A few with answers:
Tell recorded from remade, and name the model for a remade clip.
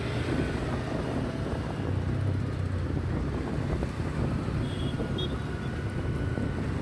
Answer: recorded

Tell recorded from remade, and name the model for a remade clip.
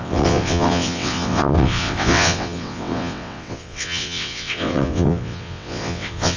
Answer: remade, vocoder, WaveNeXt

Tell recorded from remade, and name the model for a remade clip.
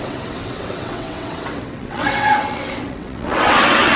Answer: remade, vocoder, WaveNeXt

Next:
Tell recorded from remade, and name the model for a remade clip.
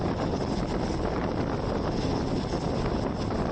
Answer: recorded